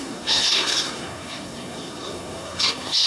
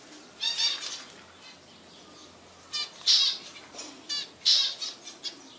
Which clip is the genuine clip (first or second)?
second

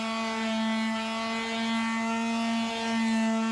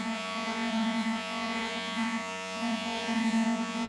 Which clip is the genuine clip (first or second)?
first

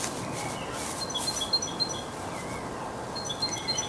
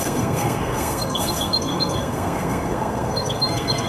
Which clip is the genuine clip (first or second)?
first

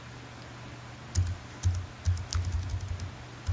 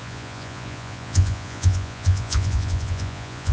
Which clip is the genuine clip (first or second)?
first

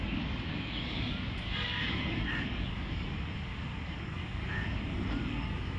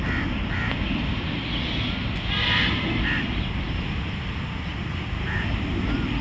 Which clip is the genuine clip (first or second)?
second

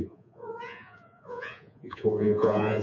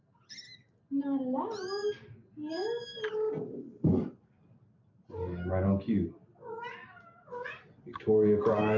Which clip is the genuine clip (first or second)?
second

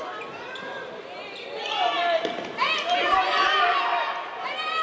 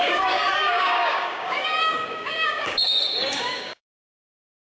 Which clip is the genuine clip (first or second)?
first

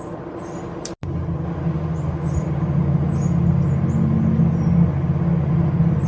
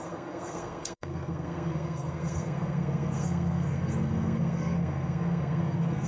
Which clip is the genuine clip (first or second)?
first